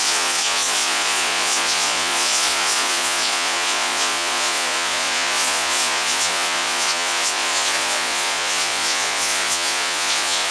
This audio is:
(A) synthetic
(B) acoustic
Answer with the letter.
A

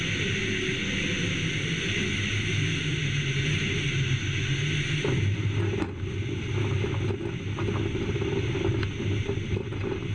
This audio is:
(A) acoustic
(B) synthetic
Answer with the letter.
A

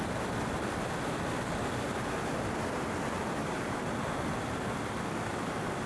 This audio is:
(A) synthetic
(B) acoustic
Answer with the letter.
B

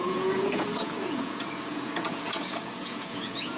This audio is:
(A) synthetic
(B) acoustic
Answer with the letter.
A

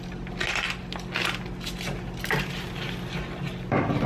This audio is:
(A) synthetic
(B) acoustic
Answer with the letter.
B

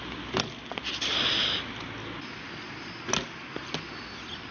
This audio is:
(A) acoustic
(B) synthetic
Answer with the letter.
A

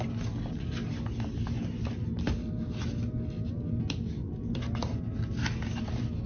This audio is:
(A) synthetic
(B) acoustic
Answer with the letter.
B